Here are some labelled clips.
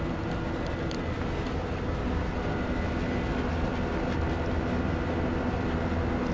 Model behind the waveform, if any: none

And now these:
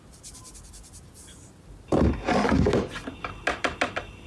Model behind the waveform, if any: none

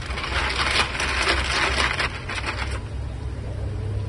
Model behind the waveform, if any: none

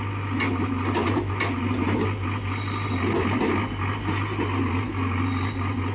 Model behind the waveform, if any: none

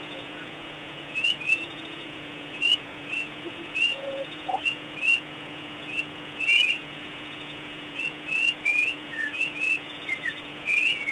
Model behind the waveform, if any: vocoder, Vocos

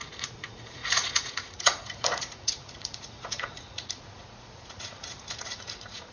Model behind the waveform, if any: vocoder, Vocos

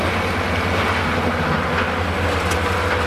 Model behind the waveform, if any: none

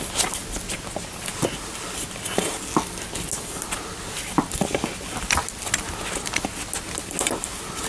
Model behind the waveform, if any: none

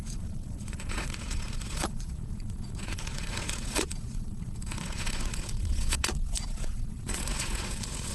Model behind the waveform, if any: vocoder, Vocos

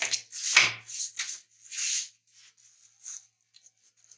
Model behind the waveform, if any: none